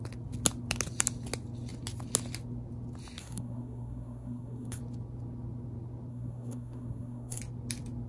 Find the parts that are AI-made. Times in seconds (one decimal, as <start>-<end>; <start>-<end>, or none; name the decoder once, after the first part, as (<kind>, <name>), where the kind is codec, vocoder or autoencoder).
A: 3.2-4.8 (codec, SNAC); 6.1-7.4